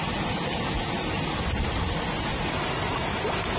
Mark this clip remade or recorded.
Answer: recorded